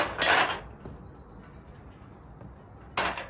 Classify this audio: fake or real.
real